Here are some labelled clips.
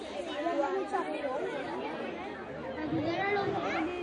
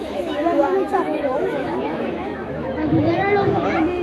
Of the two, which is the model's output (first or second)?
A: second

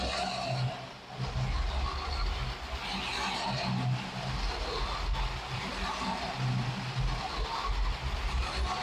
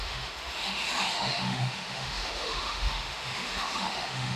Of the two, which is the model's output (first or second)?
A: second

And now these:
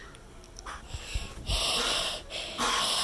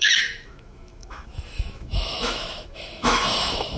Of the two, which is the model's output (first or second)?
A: second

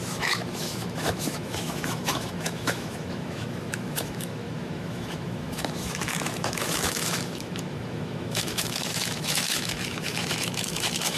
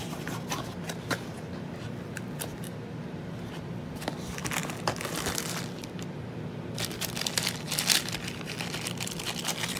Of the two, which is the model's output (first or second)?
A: first